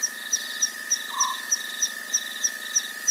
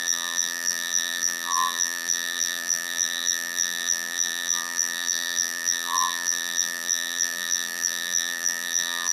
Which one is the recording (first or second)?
first